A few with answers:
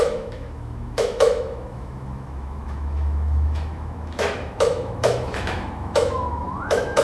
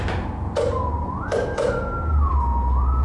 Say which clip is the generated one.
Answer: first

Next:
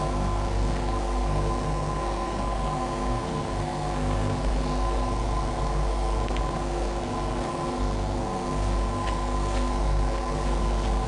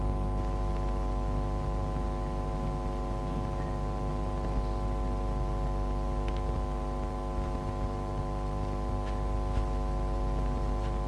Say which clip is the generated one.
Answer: first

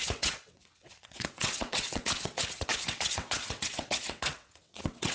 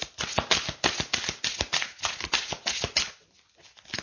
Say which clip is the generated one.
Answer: first